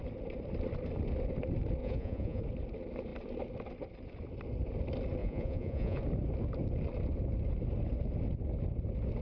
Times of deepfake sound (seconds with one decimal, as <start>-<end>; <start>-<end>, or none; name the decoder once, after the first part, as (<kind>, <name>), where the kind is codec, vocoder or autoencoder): 1.8-2.4 (vocoder, Vocos); 5.2-6.0